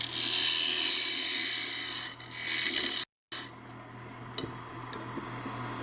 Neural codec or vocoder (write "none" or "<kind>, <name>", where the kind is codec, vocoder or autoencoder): none